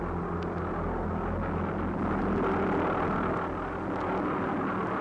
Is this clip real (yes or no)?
yes